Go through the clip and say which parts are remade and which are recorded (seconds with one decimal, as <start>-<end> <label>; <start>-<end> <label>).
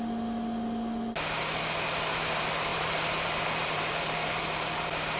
0.0-2.7 recorded; 2.7-4.4 remade; 4.4-5.2 recorded